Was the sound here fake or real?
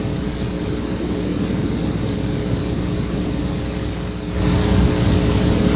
fake